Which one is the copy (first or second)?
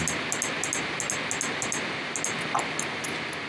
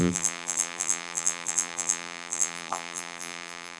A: second